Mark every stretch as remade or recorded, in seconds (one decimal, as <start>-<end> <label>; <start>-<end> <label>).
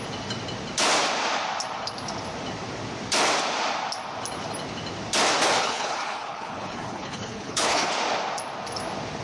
0.0-5.6 recorded; 5.6-7.9 remade; 7.9-9.2 recorded